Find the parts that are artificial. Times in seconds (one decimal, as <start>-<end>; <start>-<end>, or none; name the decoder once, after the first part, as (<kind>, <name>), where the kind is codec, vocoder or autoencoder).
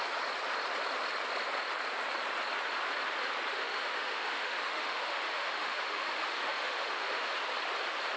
3.5-7.3 (autoencoder, DAC-VAE)